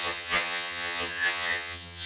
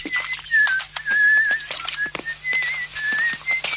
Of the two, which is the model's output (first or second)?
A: first